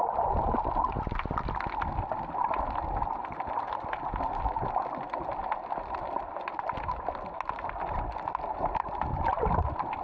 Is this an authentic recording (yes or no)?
yes